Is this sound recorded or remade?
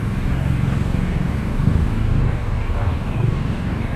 remade